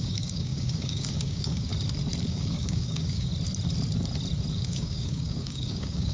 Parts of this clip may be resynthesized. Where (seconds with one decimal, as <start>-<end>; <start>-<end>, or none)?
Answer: 0.0-1.7; 2.3-3.3; 4.5-6.1